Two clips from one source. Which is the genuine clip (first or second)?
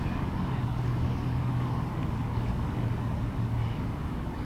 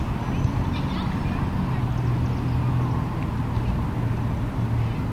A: second